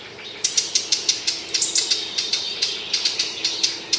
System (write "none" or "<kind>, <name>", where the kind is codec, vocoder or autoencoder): vocoder, BigVGAN v2